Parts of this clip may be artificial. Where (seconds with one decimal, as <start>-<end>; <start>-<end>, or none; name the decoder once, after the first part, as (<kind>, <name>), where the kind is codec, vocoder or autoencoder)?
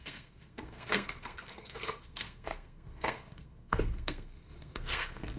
0.0-5.4 (codec, SNAC)